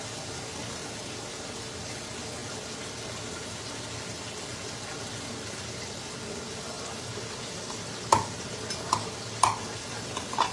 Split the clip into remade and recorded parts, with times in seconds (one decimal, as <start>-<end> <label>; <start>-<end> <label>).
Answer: 0.0-10.5 recorded